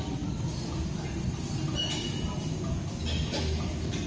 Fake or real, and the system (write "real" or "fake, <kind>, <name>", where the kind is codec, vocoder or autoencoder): real